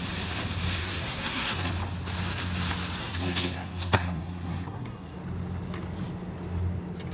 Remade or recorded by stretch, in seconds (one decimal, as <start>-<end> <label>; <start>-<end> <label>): 0.0-0.8 recorded; 0.8-1.7 remade; 1.7-3.0 recorded; 3.0-5.2 remade; 5.2-7.1 recorded